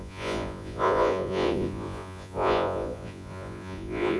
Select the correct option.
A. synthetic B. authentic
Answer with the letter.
A